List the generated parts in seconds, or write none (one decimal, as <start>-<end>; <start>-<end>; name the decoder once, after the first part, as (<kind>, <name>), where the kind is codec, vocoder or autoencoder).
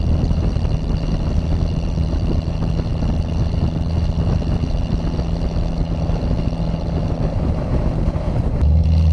none